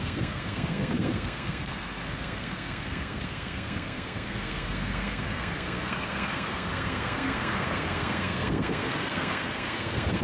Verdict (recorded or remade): remade